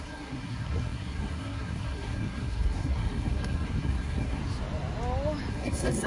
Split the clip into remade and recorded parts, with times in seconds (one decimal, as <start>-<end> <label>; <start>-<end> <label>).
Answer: 0.0-4.4 remade; 4.4-5.5 recorded; 5.5-6.1 remade